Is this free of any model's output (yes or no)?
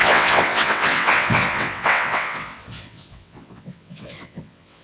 no